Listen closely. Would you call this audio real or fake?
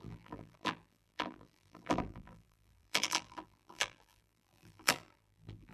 fake